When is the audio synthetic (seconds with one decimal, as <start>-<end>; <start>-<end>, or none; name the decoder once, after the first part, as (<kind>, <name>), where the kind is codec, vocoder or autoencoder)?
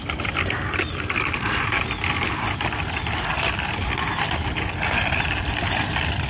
none